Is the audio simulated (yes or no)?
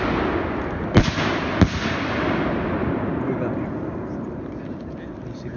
no